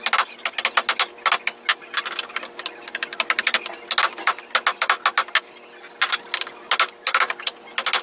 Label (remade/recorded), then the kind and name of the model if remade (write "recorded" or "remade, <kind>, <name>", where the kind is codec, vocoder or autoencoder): recorded